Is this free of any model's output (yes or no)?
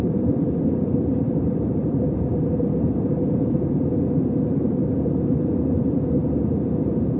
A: no